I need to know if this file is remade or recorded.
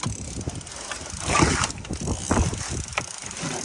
recorded